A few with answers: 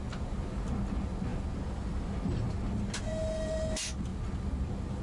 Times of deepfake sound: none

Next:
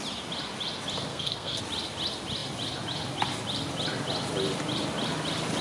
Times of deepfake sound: 1.1-1.6 (codec, SNAC)

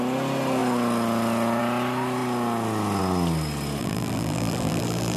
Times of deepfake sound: 3.8-5.2 (vocoder, BigVGAN v2)